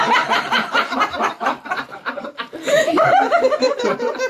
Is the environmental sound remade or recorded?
remade